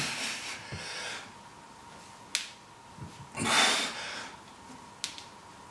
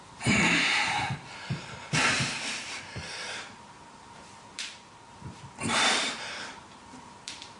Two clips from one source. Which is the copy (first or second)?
second